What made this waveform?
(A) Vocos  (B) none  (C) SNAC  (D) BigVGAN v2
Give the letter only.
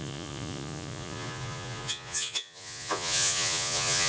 A